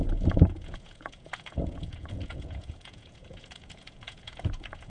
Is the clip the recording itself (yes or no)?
no